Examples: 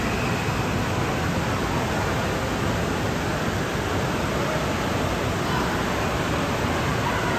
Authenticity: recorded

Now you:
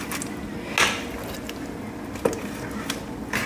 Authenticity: recorded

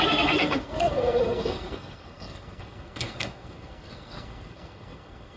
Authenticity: remade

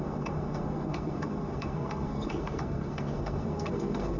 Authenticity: remade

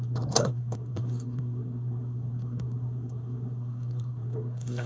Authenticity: remade